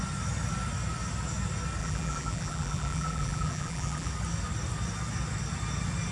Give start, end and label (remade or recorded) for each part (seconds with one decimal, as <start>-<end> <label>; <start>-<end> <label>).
0.0-1.8 recorded; 1.8-4.1 remade; 4.1-6.1 recorded